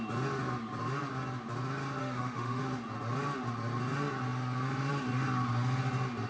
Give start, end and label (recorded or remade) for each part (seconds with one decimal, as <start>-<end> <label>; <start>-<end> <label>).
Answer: 0.0-2.0 recorded; 2.0-2.6 remade; 2.6-6.3 recorded